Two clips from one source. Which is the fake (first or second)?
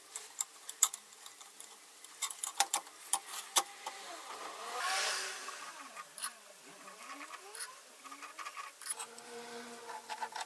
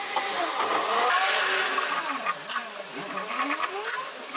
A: first